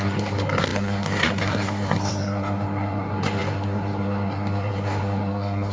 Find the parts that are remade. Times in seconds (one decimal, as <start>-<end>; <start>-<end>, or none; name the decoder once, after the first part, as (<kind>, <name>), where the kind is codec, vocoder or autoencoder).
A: 0.0-5.7 (codec, SNAC)